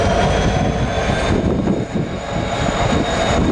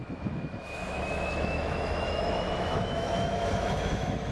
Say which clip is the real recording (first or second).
first